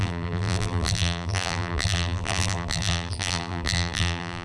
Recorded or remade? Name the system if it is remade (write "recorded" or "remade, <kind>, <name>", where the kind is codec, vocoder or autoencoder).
remade, vocoder, BigVGAN v2